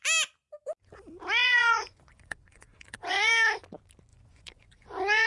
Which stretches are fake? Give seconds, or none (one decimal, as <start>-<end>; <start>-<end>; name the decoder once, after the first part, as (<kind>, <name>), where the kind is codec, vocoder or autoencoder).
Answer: 1.4-3.3 (vocoder, Vocos); 4.1-5.3